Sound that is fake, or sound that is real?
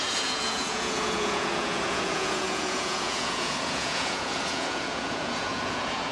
fake